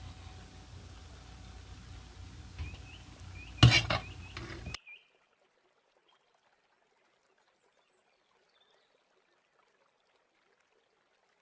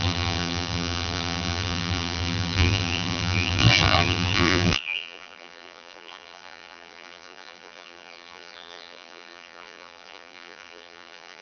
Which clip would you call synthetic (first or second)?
second